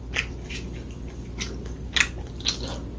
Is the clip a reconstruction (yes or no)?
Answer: no